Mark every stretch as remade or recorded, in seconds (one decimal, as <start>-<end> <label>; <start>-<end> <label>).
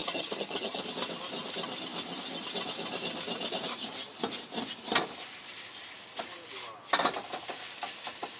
0.0-0.8 remade; 0.8-8.4 recorded